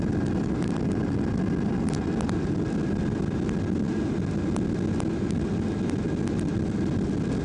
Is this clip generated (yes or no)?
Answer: no